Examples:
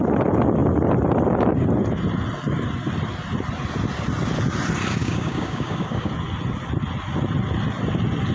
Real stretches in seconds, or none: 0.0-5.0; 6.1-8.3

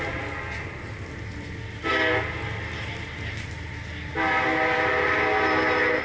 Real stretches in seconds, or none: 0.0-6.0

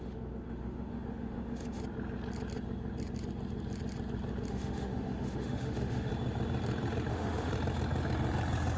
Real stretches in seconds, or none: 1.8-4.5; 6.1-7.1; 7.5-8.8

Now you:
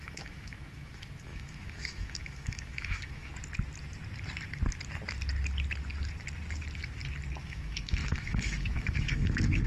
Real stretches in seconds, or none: 3.3-7.4

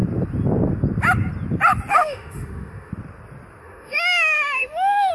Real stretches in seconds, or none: 0.0-1.9; 2.9-3.6

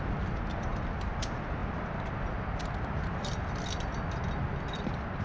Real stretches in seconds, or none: 0.0-5.2

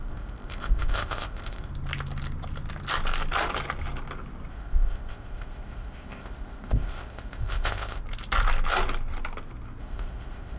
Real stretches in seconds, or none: 1.7-4.5; 8.0-9.8